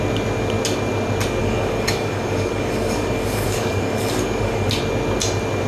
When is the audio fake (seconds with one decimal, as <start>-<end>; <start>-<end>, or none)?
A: 1.4-4.8